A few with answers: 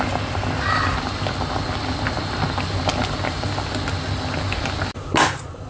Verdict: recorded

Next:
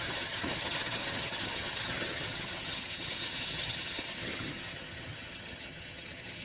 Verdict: remade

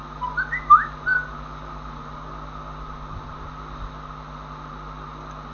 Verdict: recorded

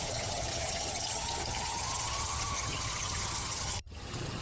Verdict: remade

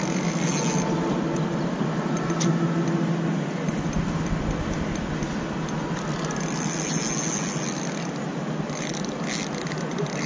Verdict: recorded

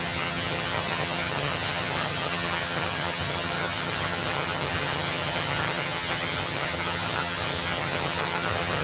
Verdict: remade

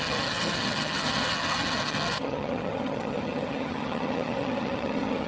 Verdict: remade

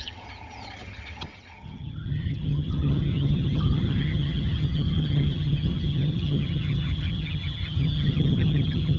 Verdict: remade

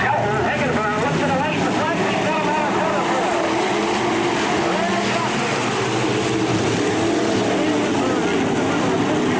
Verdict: recorded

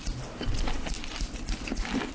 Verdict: recorded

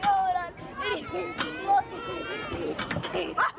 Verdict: recorded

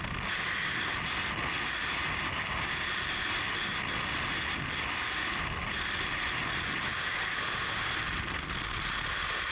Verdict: recorded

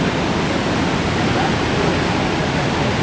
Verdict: recorded